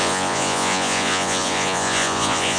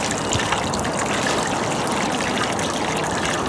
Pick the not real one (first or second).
first